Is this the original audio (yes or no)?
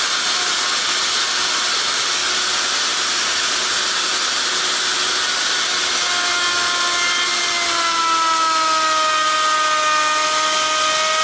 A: yes